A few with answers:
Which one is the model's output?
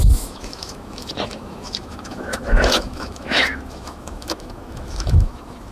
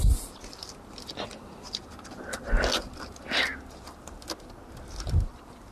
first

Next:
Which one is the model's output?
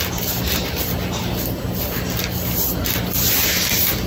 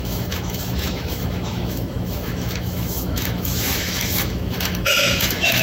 second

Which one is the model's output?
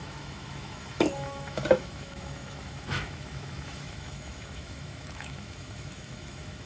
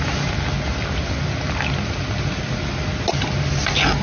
first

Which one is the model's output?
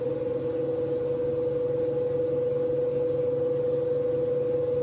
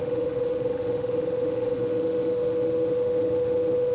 second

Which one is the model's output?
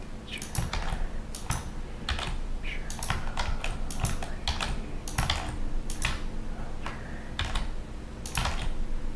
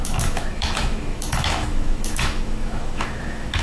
second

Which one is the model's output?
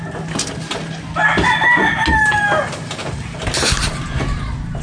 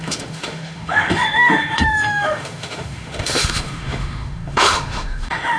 second